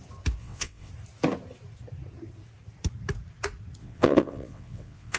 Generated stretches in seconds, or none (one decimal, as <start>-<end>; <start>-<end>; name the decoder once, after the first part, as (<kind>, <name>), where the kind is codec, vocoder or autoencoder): 0.4-0.9 (vocoder, WaveNeXt); 3.8-5.2